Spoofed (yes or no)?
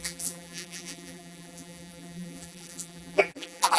yes